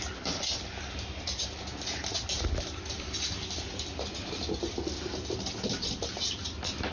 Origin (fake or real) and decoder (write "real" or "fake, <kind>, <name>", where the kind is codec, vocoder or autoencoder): real